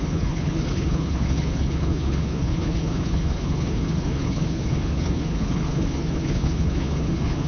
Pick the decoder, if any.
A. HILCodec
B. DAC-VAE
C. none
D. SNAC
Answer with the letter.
A